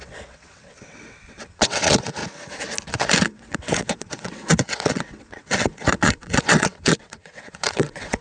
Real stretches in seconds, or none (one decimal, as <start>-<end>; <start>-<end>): 2.2-2.9